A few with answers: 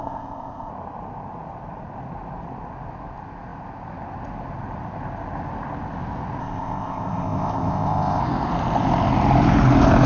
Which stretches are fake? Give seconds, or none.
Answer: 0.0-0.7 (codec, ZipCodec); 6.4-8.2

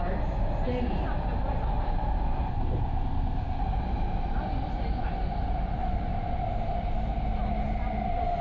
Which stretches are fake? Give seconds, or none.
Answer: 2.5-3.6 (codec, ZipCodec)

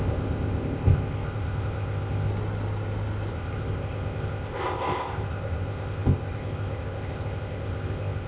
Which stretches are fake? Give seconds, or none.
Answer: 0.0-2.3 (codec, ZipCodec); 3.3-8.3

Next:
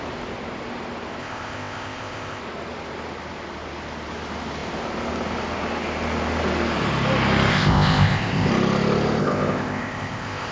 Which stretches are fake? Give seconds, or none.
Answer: 1.2-2.4 (codec, ZipCodec); 7.5-8.5; 9.2-10.5